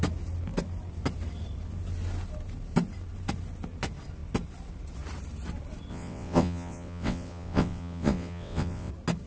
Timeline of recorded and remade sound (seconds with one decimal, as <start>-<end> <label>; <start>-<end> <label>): 0.0-5.9 recorded; 5.9-8.9 remade; 8.9-9.3 recorded